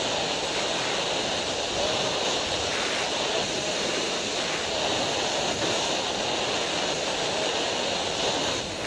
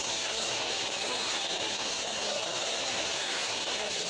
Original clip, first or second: first